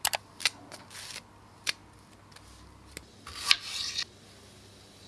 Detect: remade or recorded recorded